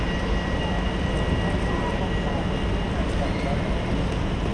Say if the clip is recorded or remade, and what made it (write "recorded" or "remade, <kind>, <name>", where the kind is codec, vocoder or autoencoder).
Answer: recorded